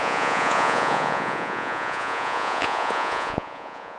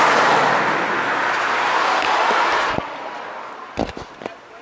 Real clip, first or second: second